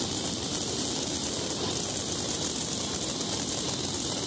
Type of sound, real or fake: real